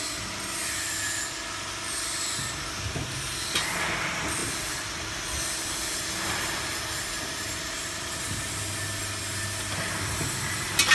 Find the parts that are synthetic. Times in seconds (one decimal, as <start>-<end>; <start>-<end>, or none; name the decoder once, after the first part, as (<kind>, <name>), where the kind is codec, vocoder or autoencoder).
none